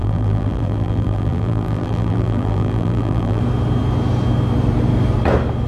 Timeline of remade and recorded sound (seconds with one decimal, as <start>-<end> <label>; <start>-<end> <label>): 0.0-3.4 remade; 3.4-5.7 recorded

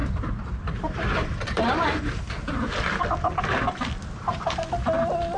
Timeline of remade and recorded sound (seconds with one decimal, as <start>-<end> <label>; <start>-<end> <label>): 0.0-2.2 remade; 2.2-5.4 recorded

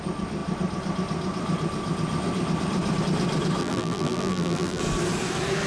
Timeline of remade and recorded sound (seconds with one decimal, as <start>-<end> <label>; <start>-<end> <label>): 0.0-3.6 recorded; 3.6-4.8 remade; 4.8-5.7 recorded

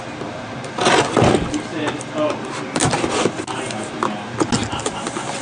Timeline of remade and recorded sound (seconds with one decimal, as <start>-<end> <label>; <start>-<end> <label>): 0.0-5.4 recorded

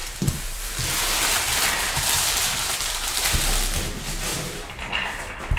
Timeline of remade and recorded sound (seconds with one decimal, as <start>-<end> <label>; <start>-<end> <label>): 0.0-3.4 remade; 3.4-4.3 recorded; 4.3-4.8 remade; 4.8-5.6 recorded

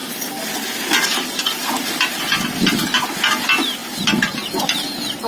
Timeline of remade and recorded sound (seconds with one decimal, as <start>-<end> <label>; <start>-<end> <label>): 0.0-5.3 recorded

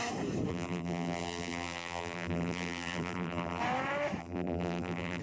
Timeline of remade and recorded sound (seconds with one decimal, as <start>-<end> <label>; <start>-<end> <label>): 0.0-0.5 recorded; 0.5-3.6 remade; 3.6-4.2 recorded; 4.2-5.2 remade

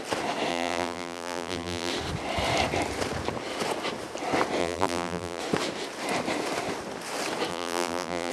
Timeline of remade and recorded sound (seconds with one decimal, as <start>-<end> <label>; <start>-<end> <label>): 0.0-0.5 recorded; 0.5-1.9 remade; 1.9-4.6 recorded; 4.6-5.4 remade; 5.4-7.5 recorded; 7.5-8.3 remade